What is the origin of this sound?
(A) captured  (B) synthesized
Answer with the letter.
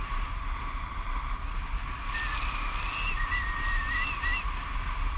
A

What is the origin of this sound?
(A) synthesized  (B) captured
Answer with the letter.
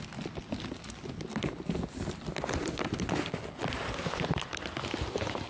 B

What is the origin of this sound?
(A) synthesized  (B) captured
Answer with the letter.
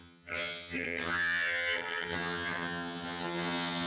A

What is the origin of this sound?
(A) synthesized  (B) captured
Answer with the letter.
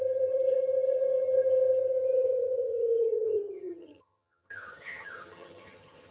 A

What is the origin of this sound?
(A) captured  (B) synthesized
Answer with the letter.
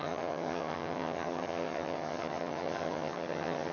B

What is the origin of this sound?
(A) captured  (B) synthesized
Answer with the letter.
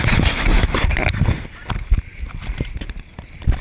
A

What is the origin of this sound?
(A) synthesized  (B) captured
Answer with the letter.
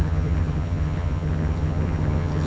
A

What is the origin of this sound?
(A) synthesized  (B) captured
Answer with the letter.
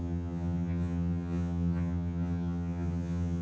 A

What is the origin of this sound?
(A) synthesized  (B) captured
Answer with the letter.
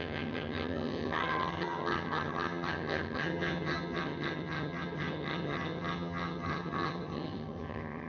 A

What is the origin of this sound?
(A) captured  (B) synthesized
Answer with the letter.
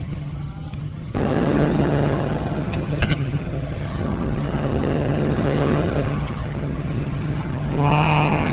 B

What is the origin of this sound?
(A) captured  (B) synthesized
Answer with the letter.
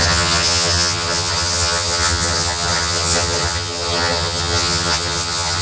B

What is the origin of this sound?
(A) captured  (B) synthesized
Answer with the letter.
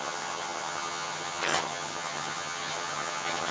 B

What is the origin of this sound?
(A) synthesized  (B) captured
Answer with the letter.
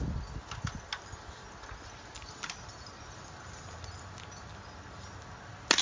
B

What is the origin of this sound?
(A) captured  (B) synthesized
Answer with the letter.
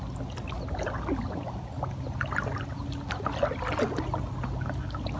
A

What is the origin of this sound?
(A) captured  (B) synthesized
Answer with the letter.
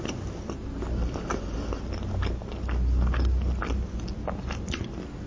A